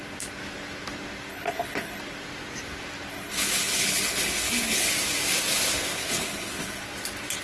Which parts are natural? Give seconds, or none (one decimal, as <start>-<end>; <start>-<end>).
0.0-1.3; 2.0-3.1; 4.9-5.9; 6.8-7.4